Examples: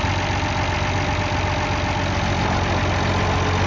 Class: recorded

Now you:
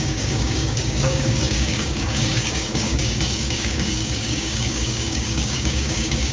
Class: remade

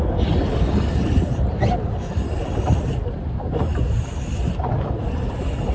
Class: recorded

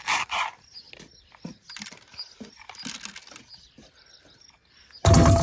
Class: recorded